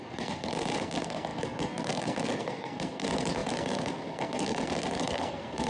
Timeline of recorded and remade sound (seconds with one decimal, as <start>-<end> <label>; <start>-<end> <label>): 0.0-5.7 remade